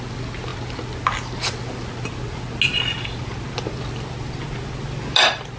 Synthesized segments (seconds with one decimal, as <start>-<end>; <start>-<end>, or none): none